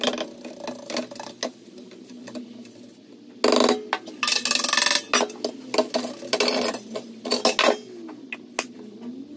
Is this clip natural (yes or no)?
yes